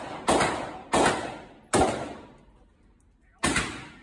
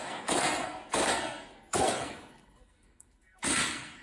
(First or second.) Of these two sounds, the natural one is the first